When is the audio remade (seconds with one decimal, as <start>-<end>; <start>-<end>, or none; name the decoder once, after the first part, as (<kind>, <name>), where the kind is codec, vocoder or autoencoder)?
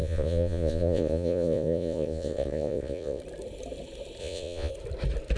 0.0-3.2 (vocoder, Vocos); 4.2-4.7